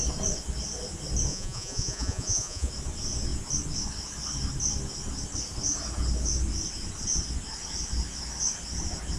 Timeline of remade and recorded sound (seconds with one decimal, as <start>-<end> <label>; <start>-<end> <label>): 0.0-1.3 recorded; 1.3-2.7 remade; 2.7-9.2 recorded